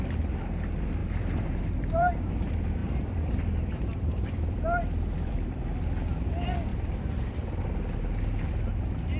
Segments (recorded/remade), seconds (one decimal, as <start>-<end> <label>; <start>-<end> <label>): 0.0-1.0 recorded; 1.0-2.3 remade; 2.3-2.8 recorded; 2.8-5.8 remade; 5.8-6.7 recorded; 6.7-7.6 remade; 7.6-9.2 recorded